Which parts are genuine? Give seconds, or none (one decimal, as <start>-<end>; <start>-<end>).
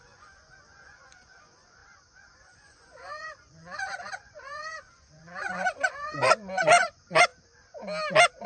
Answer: 7.3-8.5